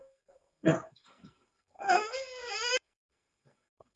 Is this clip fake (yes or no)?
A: yes